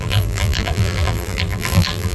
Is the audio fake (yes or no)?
yes